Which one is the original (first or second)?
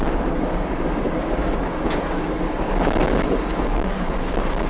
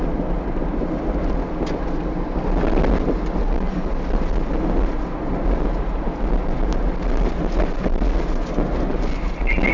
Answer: second